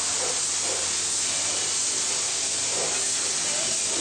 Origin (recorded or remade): recorded